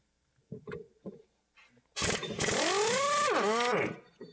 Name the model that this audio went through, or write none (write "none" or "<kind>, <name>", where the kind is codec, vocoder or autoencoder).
none